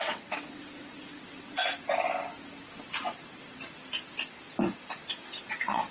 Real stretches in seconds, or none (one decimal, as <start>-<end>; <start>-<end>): 1.6-5.1